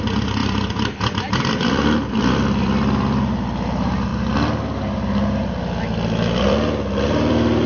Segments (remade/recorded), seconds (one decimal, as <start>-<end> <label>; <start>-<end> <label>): 0.0-4.1 remade; 4.1-6.4 recorded; 6.4-7.7 remade